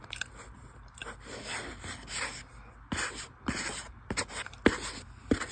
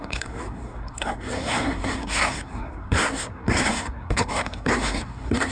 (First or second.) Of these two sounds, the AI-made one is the second